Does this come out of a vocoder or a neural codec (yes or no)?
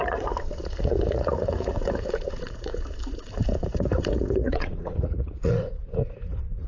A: yes